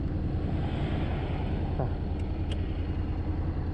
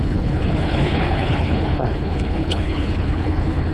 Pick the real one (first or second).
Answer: first